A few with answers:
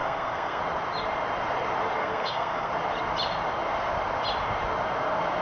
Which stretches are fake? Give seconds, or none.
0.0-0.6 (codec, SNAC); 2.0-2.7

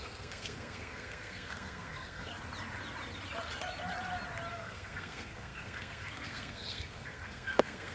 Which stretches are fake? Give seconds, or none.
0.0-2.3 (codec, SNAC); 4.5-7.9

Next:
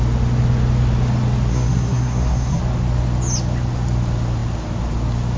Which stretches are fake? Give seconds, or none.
1.5-2.6 (codec, SNAC)

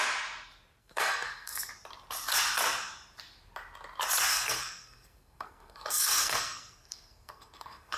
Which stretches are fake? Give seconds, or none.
0.8-1.7 (codec, SNAC); 4.3-8.0